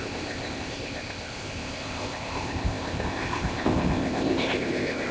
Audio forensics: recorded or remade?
remade